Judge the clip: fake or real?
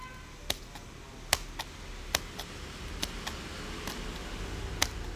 real